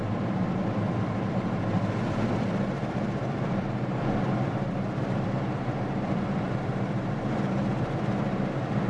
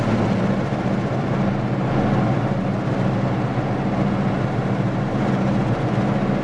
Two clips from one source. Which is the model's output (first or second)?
first